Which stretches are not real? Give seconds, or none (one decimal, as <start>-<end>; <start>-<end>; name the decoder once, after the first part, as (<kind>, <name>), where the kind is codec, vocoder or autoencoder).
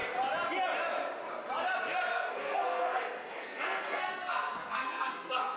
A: 2.1-5.6 (codec, SNAC)